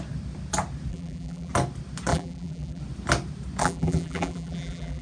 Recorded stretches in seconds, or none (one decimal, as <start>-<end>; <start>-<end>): 0.0-0.9; 1.5-2.1; 2.8-3.6